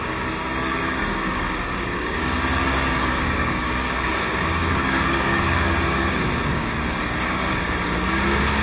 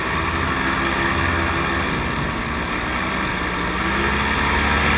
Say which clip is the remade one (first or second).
first